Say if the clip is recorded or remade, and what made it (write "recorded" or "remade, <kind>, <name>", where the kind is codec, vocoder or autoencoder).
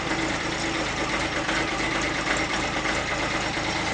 recorded